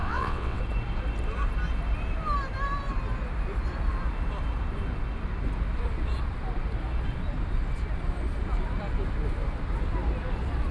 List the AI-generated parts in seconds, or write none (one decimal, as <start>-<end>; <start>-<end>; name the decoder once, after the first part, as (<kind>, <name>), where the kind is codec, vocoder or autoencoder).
0.0-0.6 (vocoder, WaveNeXt)

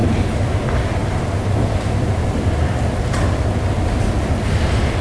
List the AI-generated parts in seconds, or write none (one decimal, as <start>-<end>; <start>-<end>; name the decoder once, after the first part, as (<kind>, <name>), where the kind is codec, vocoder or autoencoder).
none

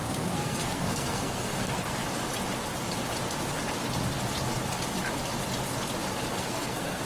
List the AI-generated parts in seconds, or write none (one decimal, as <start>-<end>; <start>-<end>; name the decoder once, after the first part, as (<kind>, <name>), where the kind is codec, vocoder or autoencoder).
0.0-2.0 (codec, SNAC); 6.3-7.1

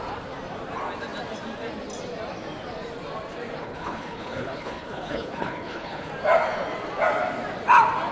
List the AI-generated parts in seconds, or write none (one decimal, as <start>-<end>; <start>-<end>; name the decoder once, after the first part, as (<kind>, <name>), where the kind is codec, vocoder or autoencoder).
3.6-6.1 (codec, HILCodec)

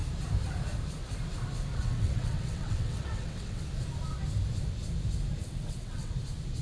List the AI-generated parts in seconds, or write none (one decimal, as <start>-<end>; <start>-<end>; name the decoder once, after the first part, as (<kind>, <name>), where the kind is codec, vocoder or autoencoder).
1.7-3.6 (vocoder, WaveNeXt); 5.4-6.1

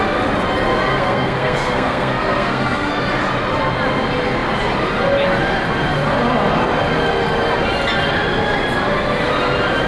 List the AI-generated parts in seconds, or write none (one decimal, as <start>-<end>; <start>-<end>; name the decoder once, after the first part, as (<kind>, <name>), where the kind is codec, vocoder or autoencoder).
0.9-3.0 (codec, SNAC)